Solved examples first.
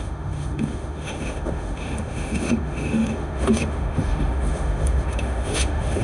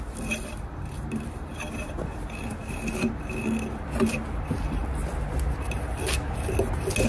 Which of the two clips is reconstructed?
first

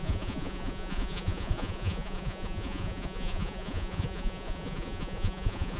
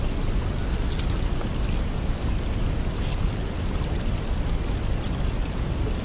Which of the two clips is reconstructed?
first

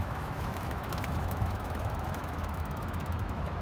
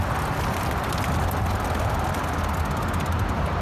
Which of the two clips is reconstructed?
first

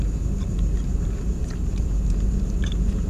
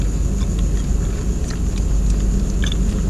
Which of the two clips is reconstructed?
first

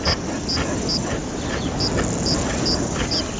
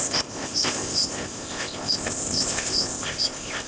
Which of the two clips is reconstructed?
second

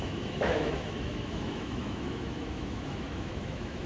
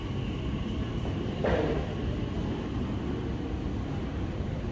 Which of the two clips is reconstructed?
first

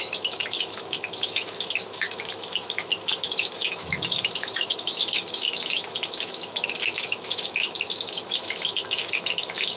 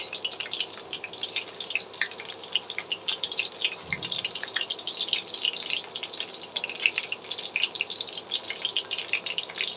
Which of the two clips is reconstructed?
first